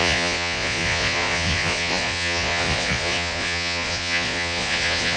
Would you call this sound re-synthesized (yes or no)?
yes